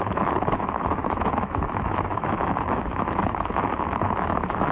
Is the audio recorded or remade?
remade